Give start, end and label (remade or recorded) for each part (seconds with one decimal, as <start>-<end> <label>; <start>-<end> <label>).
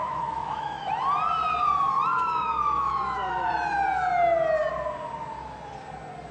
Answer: 0.0-0.9 remade; 0.9-2.1 recorded; 2.1-3.5 remade; 3.5-6.3 recorded